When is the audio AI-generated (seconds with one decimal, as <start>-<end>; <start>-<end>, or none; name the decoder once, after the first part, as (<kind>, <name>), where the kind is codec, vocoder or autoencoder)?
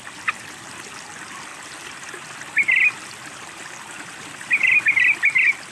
none